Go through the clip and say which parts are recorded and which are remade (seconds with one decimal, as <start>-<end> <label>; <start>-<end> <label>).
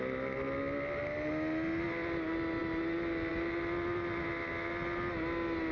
0.0-5.7 recorded